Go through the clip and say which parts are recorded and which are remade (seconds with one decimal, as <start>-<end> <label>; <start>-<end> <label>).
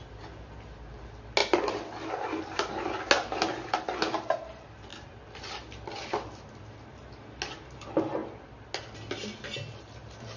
0.0-10.4 recorded